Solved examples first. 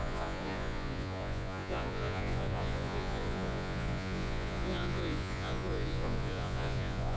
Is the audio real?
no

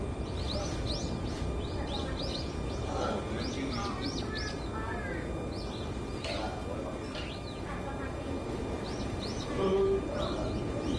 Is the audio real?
yes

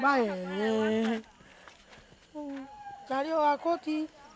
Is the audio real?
yes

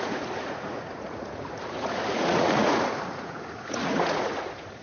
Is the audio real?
no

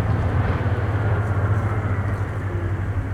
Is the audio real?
yes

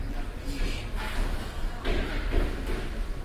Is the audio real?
yes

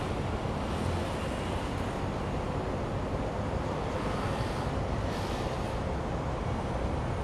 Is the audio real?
yes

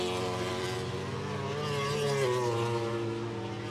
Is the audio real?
yes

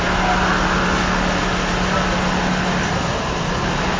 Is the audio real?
yes